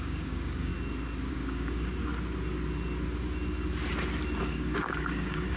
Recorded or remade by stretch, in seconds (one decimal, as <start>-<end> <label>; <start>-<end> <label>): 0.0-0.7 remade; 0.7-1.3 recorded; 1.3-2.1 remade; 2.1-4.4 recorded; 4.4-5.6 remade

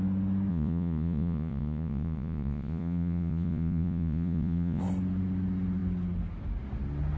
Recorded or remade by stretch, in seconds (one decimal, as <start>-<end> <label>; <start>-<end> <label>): 0.0-0.5 recorded; 0.5-4.8 remade; 4.8-7.2 recorded

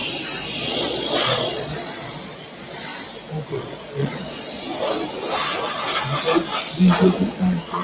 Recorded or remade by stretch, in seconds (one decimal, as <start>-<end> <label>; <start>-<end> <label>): 0.0-0.5 recorded; 0.5-2.9 remade; 2.9-3.5 recorded; 3.5-4.7 remade; 4.7-6.6 recorded; 6.6-7.8 remade

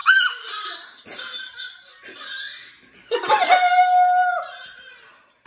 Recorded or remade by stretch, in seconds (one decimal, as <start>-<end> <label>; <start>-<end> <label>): 0.0-0.5 remade; 0.5-5.5 recorded

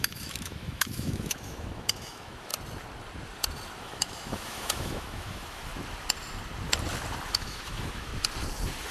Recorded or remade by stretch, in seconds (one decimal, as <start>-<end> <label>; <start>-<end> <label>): 0.0-2.5 remade; 2.5-3.8 recorded; 3.8-5.7 remade; 5.7-7.3 recorded; 7.3-8.1 remade; 8.1-8.9 recorded

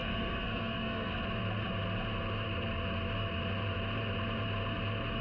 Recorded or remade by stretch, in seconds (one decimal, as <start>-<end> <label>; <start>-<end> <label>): 0.0-1.1 remade; 1.1-5.2 recorded

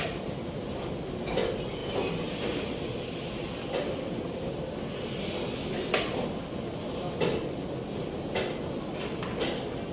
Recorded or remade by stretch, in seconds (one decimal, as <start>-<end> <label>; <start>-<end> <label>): 0.0-9.9 recorded

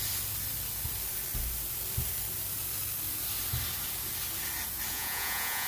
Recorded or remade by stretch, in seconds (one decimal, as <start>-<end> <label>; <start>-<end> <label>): 0.0-4.9 recorded; 4.9-5.7 remade